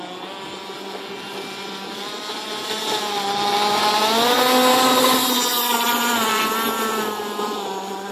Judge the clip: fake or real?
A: real